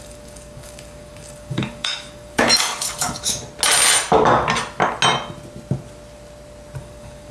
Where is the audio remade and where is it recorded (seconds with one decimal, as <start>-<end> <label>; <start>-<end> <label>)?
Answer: 0.0-3.4 remade; 3.4-6.8 recorded; 6.8-7.3 remade